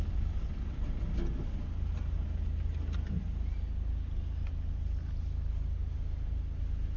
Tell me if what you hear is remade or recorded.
recorded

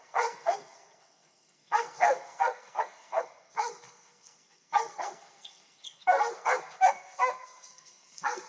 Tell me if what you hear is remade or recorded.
remade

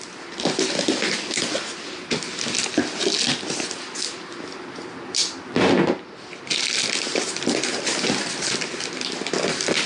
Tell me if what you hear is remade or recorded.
recorded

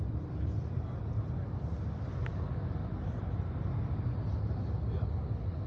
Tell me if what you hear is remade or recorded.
recorded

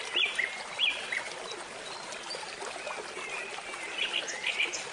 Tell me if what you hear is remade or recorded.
recorded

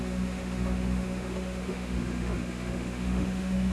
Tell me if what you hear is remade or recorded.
remade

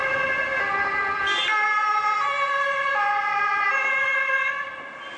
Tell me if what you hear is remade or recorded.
recorded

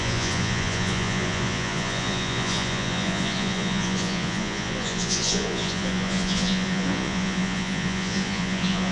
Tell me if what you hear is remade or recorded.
remade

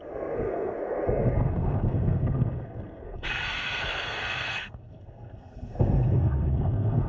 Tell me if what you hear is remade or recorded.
remade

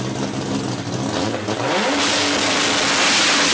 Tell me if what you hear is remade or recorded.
recorded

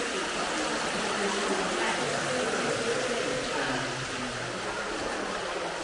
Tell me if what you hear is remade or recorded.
recorded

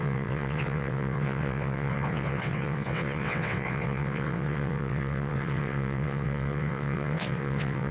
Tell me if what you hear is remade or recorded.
remade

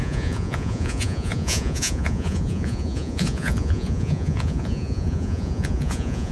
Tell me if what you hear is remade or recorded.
remade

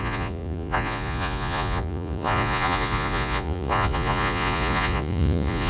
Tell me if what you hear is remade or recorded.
remade